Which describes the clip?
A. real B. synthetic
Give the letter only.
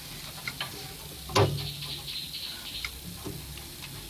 A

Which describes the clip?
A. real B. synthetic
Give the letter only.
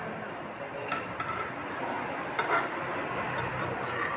A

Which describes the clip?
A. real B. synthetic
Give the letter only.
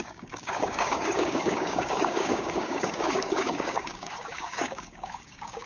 B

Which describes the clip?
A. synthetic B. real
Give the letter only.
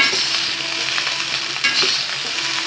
B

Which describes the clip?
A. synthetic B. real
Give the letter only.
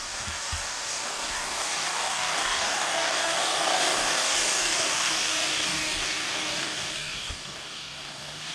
A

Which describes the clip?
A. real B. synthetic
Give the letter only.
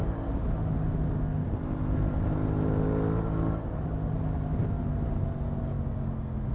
A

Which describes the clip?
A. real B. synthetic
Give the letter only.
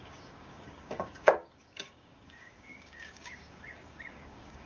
B